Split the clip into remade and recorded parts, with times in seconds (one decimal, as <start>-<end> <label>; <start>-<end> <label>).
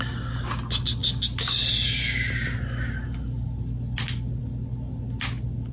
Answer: 0.0-5.7 recorded